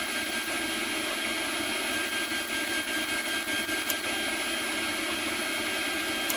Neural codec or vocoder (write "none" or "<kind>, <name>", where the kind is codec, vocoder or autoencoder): none